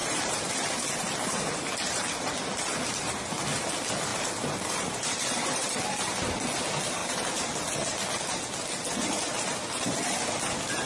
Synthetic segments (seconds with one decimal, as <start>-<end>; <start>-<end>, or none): 0.0-0.5; 4.1-5.8; 7.0-7.6